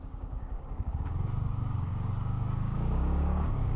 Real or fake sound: fake